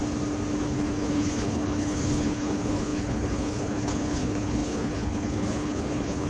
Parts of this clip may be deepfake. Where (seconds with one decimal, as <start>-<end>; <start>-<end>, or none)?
0.6-6.3